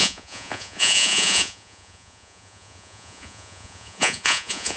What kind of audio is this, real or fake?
fake